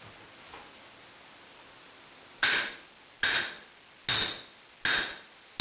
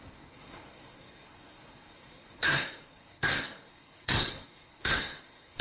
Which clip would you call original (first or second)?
first